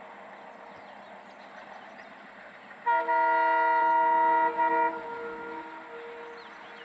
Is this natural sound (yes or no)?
yes